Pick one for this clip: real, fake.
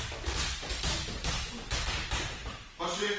real